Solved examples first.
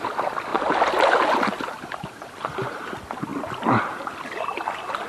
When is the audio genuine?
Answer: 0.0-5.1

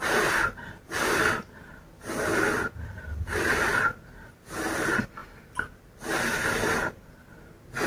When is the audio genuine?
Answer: 0.0-7.9